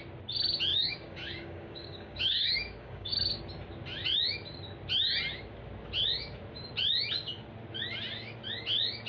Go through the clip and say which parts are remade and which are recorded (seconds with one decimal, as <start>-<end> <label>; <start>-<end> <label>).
0.0-0.7 recorded; 0.7-3.4 remade; 3.4-9.1 recorded